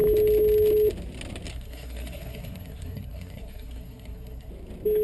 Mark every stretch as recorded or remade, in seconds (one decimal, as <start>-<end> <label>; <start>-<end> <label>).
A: 0.0-1.5 recorded; 1.5-4.5 remade; 4.5-5.0 recorded